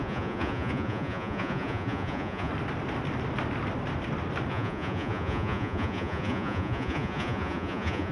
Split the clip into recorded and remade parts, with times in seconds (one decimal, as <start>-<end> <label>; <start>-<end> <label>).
0.0-2.5 remade; 2.5-4.5 recorded; 4.5-8.1 remade